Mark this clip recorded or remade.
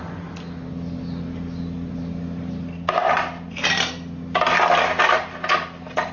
recorded